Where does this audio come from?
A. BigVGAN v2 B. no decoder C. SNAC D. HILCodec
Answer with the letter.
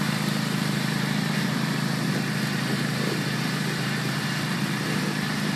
A